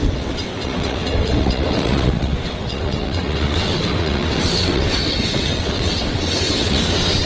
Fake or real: fake